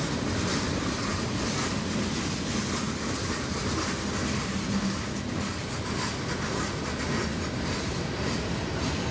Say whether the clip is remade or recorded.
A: recorded